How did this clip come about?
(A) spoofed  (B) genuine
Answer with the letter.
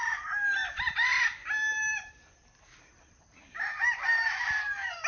B